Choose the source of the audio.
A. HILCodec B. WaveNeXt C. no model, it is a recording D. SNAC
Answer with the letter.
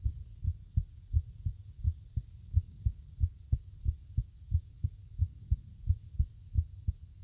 C